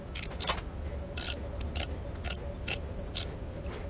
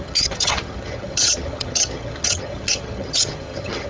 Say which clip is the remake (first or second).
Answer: second